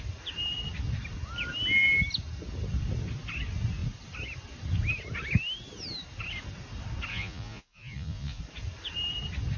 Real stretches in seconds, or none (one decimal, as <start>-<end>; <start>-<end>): 0.0-7.1; 8.4-9.6